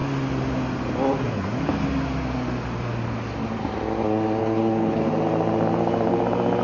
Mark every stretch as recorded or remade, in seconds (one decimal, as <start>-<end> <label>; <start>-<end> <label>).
0.0-4.4 recorded; 4.4-5.1 remade; 5.1-6.6 recorded